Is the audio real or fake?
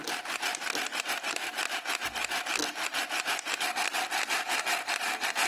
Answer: real